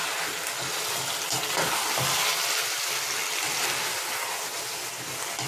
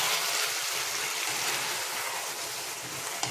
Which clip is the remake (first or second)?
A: second